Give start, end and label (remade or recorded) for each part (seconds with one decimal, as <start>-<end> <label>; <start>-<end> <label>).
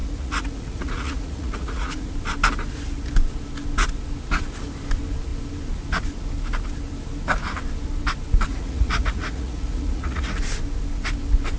0.0-2.1 remade; 2.1-8.5 recorded; 8.5-10.4 remade; 10.4-11.6 recorded